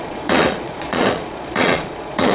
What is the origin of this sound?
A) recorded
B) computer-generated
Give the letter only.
B